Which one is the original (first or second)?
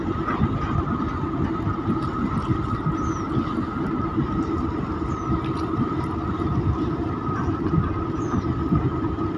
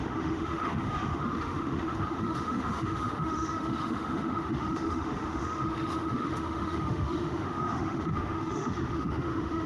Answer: first